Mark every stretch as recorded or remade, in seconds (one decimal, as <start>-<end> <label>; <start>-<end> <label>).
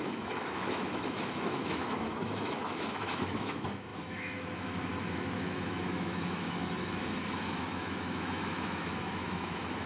0.0-9.9 remade